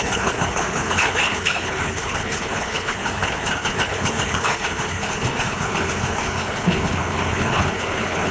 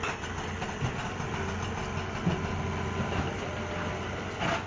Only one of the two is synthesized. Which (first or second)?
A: first